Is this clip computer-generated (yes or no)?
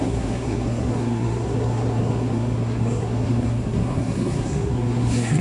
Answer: yes